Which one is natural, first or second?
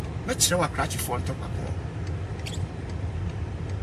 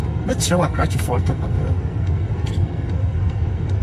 first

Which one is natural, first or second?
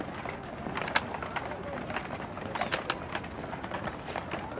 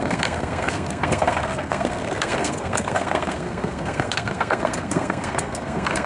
first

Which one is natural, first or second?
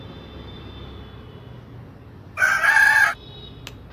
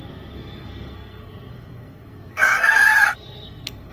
first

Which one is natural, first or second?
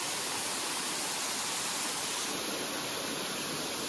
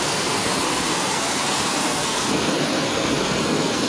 first